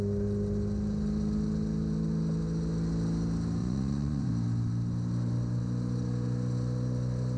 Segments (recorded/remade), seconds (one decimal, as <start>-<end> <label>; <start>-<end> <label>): 0.0-3.6 recorded; 3.6-4.3 remade; 4.3-7.4 recorded